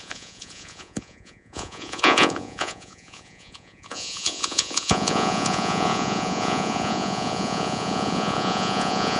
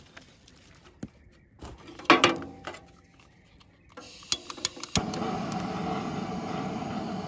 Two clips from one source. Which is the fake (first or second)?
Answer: first